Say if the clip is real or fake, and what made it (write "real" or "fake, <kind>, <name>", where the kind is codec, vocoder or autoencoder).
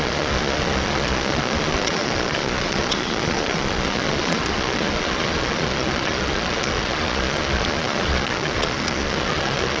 fake, vocoder, Vocos